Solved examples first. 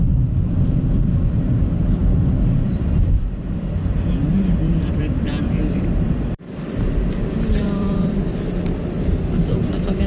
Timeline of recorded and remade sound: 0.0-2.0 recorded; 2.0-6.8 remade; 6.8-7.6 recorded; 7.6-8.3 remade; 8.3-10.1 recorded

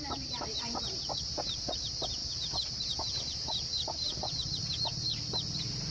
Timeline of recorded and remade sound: 0.0-5.9 remade

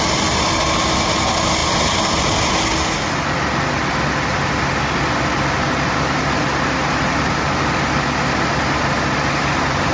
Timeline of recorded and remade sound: 0.0-9.9 recorded

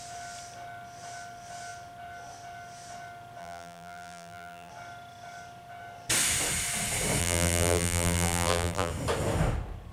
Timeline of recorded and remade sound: 0.0-3.4 recorded; 3.4-4.7 remade; 4.7-7.2 recorded; 7.2-8.9 remade; 8.9-9.9 recorded

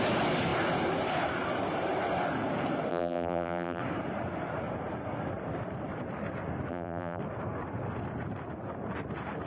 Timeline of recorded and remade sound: 0.0-2.9 recorded; 2.9-3.8 remade; 3.8-6.7 recorded; 6.7-7.2 remade; 7.2-9.5 recorded

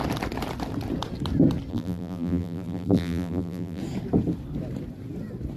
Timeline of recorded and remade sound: 0.0-1.7 recorded; 1.7-3.8 remade; 3.8-5.6 recorded

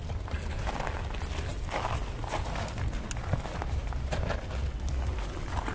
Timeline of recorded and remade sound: 0.0-5.7 recorded